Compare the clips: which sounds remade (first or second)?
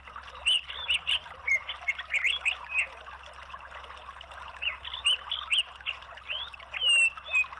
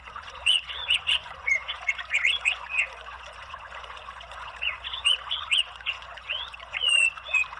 second